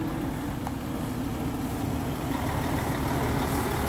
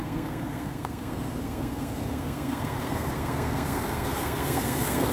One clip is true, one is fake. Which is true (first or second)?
first